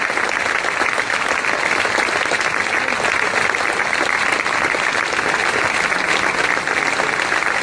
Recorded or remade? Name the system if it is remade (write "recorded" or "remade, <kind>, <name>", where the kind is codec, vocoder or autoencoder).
recorded